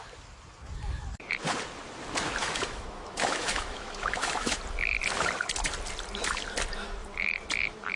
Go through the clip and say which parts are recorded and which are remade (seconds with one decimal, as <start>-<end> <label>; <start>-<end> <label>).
0.0-2.4 recorded; 2.4-4.6 remade; 4.6-8.0 recorded